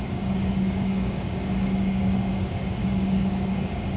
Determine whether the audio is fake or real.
fake